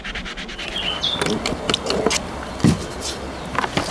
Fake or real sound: real